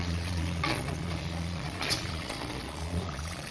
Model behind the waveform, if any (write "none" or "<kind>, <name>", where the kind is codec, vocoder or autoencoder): vocoder, Vocos